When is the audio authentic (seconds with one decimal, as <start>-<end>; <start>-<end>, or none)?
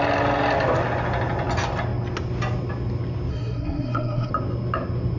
0.0-3.3; 4.3-5.2